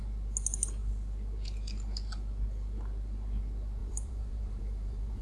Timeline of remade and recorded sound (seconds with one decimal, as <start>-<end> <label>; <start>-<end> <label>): 0.0-3.8 recorded; 3.8-5.2 remade

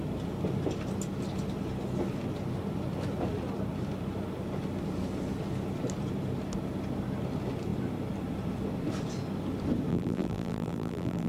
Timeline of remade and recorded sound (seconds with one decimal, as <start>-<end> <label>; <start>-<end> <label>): 0.0-9.9 recorded; 9.9-11.3 remade

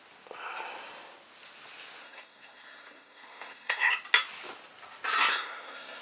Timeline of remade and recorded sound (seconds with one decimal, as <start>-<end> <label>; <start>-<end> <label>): 0.0-2.0 recorded; 2.0-3.9 remade; 3.9-5.3 recorded; 5.3-6.0 remade

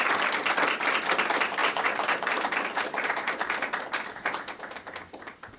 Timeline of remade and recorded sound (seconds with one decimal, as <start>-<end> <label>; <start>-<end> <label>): 0.0-1.6 recorded; 1.6-3.3 remade; 3.3-5.6 recorded

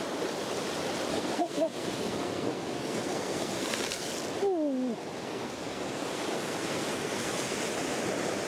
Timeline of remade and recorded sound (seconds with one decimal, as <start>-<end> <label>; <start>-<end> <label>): 0.0-1.1 recorded; 1.1-4.1 remade; 4.1-5.2 recorded; 5.2-7.6 remade; 7.6-8.5 recorded